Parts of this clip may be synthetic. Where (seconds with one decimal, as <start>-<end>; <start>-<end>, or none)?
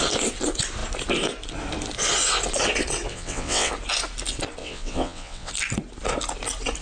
3.1-3.7; 4.6-5.5